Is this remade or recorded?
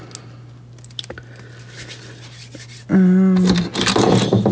recorded